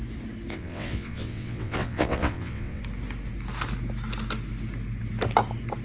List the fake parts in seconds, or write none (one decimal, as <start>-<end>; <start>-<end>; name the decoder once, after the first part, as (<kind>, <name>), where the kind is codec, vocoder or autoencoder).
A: 0.5-2.8 (vocoder, WaveNeXt)